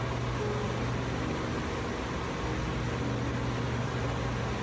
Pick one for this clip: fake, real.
real